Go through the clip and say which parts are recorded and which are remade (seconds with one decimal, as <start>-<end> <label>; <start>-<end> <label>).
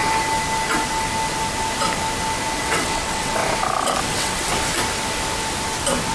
0.0-2.6 recorded; 2.6-3.4 remade; 3.4-4.0 recorded; 4.0-4.5 remade; 4.5-6.1 recorded